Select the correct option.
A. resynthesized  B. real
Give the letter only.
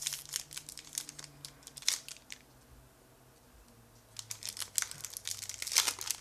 B